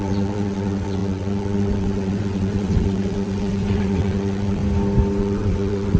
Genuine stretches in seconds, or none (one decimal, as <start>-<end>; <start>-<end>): 4.6-5.2